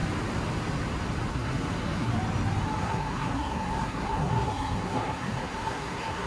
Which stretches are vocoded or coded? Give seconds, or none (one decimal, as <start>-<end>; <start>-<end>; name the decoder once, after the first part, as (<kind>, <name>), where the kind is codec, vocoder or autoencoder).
1.3-2.1 (codec, SNAC); 2.8-6.3